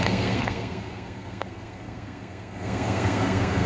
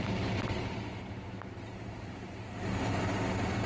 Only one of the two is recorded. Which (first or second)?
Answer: second